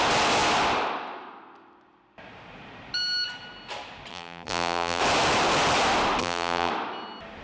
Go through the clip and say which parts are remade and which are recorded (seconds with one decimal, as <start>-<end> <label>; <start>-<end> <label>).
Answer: 0.0-4.1 recorded; 4.1-5.0 remade; 5.0-6.2 recorded; 6.2-6.7 remade; 6.7-7.4 recorded